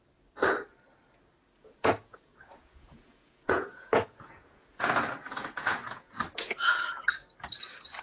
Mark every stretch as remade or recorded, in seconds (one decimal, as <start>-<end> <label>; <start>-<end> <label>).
0.0-1.6 recorded; 1.6-4.9 remade; 4.9-5.4 recorded; 5.4-6.8 remade; 6.8-8.0 recorded